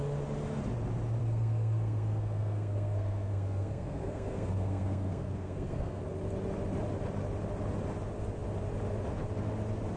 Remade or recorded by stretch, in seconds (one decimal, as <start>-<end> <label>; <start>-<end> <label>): 0.0-1.2 recorded; 1.2-6.0 remade; 6.0-10.0 recorded